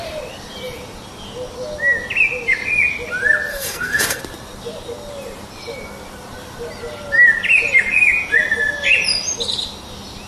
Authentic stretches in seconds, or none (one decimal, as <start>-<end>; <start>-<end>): 0.0-3.5; 4.2-10.3